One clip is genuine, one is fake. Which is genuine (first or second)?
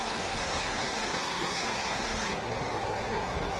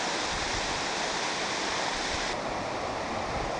second